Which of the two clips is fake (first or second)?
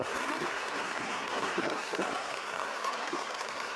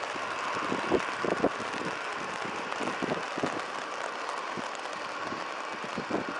first